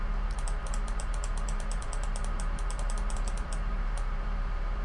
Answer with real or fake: fake